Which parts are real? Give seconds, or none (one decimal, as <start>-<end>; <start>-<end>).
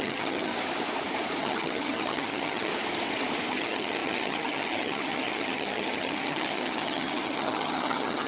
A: 0.5-1.4; 2.7-3.5